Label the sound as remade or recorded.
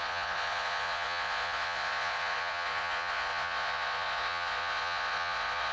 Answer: remade